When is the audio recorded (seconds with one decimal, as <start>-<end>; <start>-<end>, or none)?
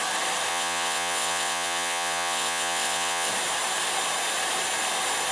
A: 0.0-0.5; 3.3-5.3